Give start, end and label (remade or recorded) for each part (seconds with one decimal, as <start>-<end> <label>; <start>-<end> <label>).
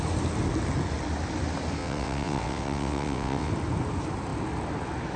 0.0-1.8 recorded; 1.8-3.5 remade; 3.5-5.2 recorded